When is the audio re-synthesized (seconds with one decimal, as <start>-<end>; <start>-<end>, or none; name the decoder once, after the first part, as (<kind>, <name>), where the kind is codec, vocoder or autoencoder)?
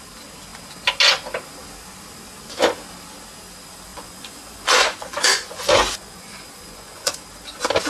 3.9-7.2 (vocoder, Vocos)